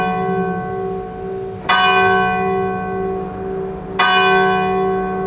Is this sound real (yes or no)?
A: yes